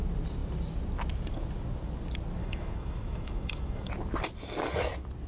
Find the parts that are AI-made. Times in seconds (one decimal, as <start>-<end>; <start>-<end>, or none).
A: 2.4-3.9

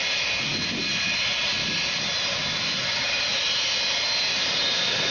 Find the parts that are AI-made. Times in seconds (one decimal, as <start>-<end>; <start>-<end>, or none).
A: none